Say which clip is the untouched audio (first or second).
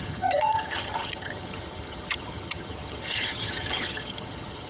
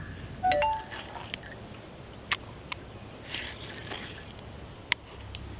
second